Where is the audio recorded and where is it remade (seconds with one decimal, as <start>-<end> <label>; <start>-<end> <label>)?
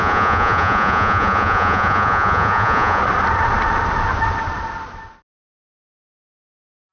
0.0-3.0 remade; 3.0-6.9 recorded